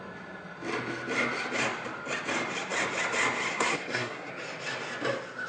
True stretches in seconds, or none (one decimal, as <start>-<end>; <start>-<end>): 0.0-3.5; 4.3-5.5